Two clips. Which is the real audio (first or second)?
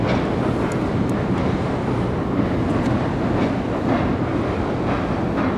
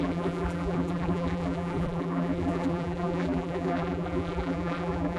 first